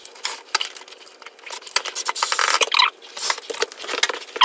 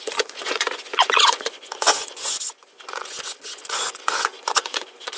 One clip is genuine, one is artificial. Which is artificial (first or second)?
second